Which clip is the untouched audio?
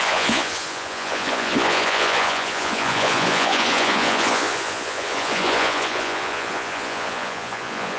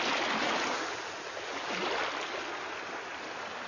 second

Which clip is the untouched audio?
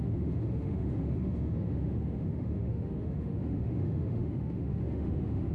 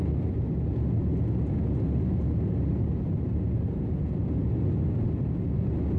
second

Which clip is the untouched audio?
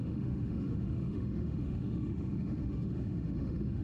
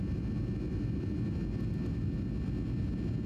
second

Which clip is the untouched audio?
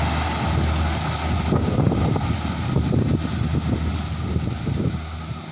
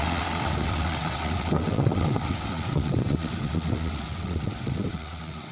first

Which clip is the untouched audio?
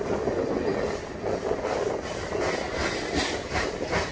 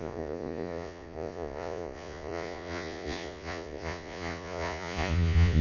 first